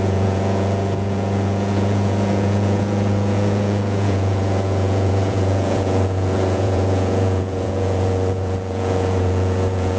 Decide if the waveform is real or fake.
fake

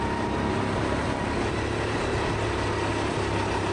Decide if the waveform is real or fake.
real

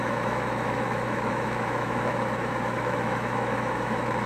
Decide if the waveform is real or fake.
fake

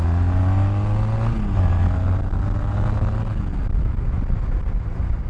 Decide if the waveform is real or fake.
real